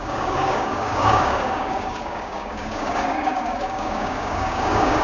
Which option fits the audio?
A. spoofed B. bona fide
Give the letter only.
A